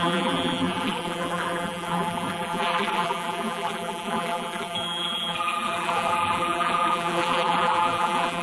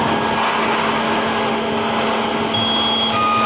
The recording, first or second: second